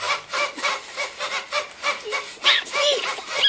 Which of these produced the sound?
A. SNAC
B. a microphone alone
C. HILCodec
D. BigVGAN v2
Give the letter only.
D